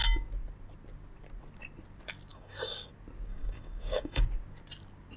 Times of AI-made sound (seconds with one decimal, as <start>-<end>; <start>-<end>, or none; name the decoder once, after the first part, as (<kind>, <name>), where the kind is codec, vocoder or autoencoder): 2.3-2.9 (codec, DAC); 3.3-4.2